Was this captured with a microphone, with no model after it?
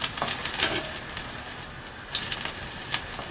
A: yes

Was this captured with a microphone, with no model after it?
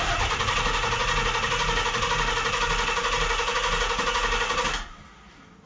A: yes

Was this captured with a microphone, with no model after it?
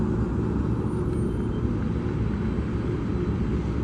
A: yes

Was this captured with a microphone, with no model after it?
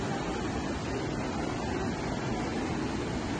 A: yes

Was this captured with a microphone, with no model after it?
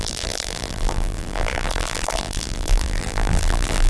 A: no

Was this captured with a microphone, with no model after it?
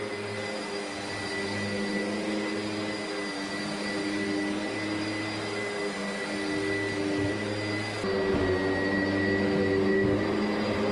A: yes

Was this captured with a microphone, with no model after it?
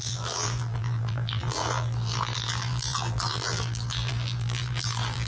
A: no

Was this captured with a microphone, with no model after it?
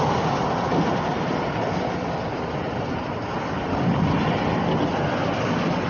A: yes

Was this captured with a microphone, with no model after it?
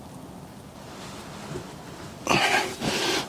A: yes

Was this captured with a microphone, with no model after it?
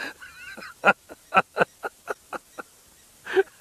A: yes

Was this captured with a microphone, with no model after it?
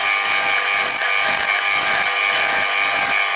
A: yes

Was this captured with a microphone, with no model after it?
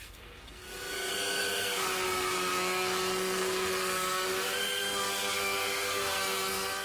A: no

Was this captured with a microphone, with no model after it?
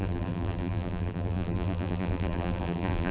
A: no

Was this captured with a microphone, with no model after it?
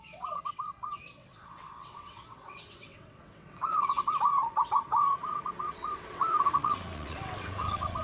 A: no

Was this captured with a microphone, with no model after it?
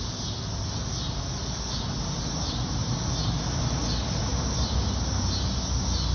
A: yes